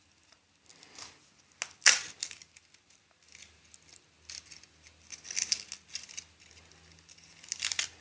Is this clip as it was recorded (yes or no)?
yes